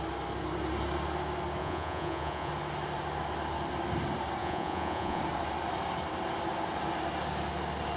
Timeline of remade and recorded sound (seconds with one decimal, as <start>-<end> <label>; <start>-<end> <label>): 0.0-1.6 recorded; 1.6-2.5 remade; 2.5-4.4 recorded; 4.4-5.2 remade; 5.2-8.0 recorded

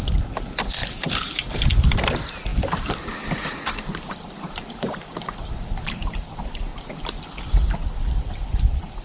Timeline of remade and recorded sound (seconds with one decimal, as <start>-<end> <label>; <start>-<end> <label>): 0.0-9.0 remade

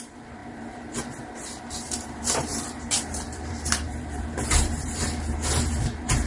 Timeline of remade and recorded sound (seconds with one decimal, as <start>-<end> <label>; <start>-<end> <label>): 0.0-6.3 remade